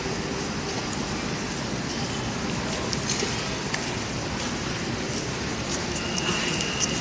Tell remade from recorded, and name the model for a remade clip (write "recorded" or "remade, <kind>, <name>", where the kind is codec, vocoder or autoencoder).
recorded